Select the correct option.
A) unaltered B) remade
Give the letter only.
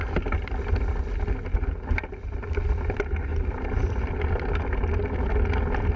A